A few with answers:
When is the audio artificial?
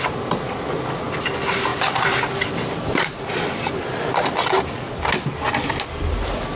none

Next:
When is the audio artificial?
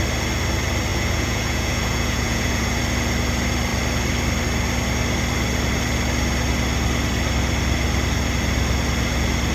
0.9-2.8 (vocoder, Vocos)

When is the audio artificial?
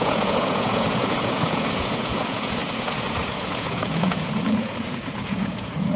0.0-6.0 (vocoder, Vocos)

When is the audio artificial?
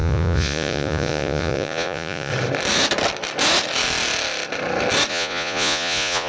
0.0-2.3 (vocoder, Vocos); 5.1-6.3